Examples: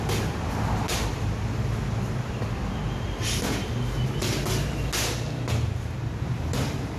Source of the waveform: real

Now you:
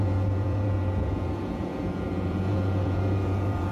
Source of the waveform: fake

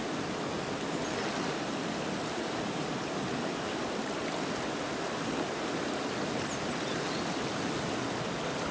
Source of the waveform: real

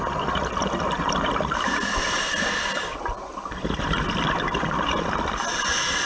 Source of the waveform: real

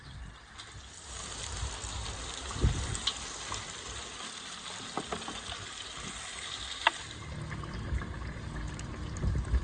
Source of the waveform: real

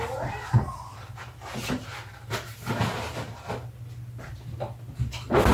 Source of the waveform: real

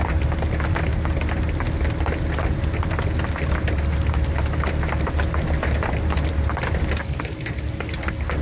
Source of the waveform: real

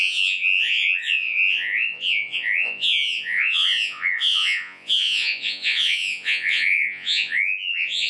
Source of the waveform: fake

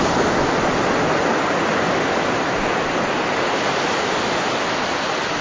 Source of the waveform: real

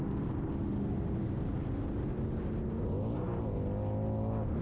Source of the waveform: real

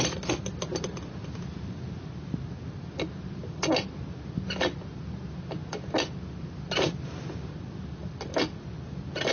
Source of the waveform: real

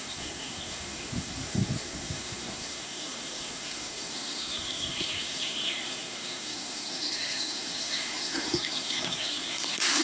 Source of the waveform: fake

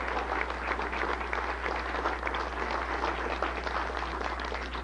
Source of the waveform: real